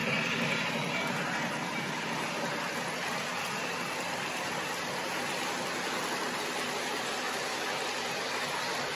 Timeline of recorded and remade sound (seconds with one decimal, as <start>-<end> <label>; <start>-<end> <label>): 0.0-2.3 remade; 2.3-8.9 recorded